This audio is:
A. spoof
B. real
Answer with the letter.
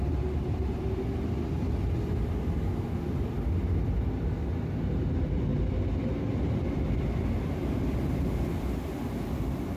B